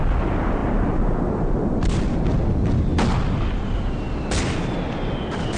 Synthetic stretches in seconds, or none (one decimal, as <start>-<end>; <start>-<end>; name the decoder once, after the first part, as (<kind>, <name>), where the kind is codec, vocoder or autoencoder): none